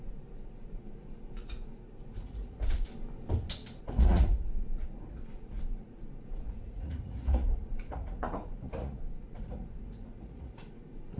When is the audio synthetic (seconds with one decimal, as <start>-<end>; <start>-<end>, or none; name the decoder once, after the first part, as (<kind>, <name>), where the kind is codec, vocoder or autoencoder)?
0.0-2.9 (vocoder, Vocos); 3.8-11.2